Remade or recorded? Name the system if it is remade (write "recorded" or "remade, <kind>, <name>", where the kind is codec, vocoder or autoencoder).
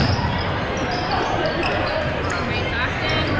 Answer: recorded